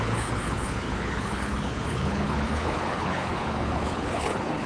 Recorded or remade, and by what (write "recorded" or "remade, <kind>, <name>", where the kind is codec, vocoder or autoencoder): remade, codec, HILCodec